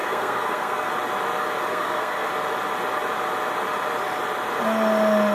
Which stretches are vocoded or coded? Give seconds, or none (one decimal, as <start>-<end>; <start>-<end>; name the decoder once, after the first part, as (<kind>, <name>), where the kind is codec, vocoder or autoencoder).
0.0-0.9 (codec, SNAC); 1.7-2.3